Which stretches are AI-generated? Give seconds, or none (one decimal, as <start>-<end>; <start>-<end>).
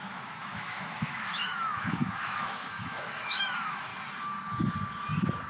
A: 0.0-3.9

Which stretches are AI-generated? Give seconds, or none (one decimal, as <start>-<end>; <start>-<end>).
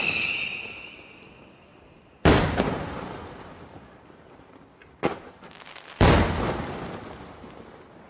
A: 1.7-3.8; 4.8-5.6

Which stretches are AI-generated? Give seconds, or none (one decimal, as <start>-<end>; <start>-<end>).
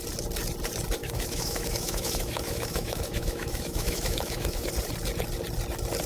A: 1.0-4.7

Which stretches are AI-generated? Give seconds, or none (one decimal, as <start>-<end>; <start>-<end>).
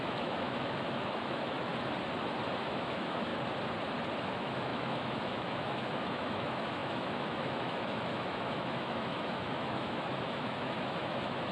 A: 0.0-1.7; 2.6-3.3; 4.3-11.5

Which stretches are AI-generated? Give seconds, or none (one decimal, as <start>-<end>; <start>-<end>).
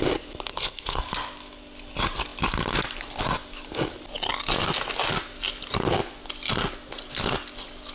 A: 0.5-1.0